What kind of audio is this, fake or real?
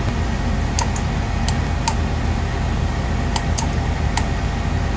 real